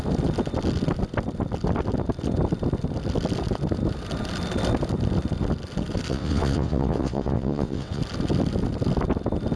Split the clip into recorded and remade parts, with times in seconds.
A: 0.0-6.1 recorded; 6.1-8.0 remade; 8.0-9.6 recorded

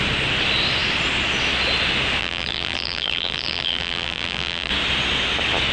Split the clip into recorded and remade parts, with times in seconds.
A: 0.0-2.2 recorded; 2.2-4.7 remade; 4.7-5.7 recorded

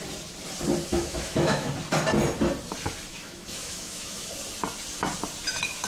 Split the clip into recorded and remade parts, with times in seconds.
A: 0.0-0.9 recorded; 0.9-1.7 remade; 1.7-3.1 recorded; 3.1-4.3 remade; 4.3-5.9 recorded

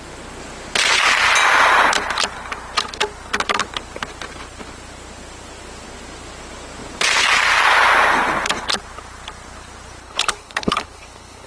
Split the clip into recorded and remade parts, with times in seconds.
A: 0.0-10.0 recorded; 10.0-11.5 remade